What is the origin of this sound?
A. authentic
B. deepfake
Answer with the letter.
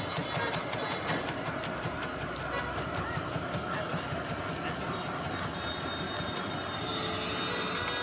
A